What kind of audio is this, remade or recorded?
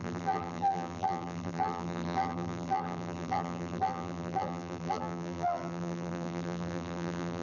remade